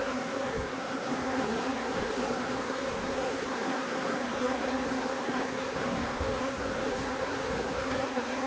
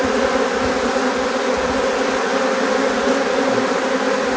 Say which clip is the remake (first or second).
first